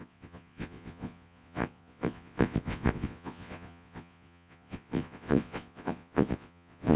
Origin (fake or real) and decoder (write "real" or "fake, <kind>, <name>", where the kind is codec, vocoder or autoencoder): fake, vocoder, Vocos